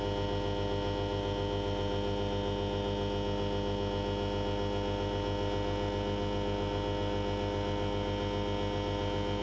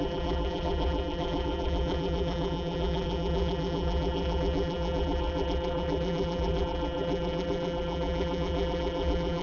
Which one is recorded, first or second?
first